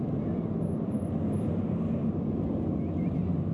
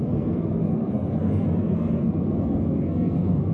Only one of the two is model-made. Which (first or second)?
second